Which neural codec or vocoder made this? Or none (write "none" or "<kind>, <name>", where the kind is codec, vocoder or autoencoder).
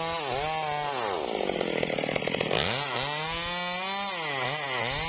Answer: none